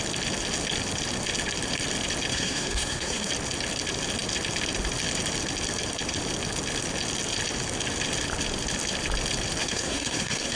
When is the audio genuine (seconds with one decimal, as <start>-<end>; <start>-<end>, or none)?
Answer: 0.0-2.3; 3.3-9.6